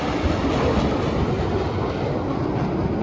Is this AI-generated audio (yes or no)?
no